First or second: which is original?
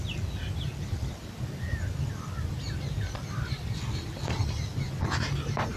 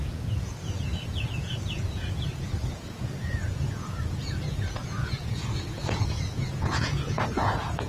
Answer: first